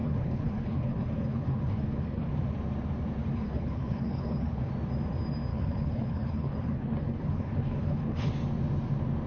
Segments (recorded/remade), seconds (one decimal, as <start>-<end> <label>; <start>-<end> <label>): 0.0-2.3 remade; 2.3-3.3 recorded; 3.3-4.7 remade; 4.7-5.5 recorded; 5.5-8.3 remade; 8.3-9.3 recorded